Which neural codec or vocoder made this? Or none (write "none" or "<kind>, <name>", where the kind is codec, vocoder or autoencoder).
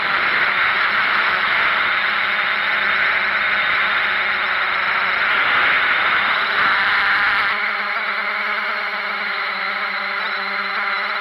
none